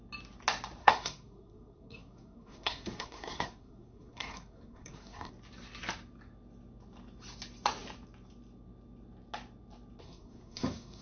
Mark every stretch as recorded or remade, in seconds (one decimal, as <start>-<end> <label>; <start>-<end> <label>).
0.0-0.8 recorded; 0.8-5.3 remade; 5.3-10.0 recorded; 10.0-11.0 remade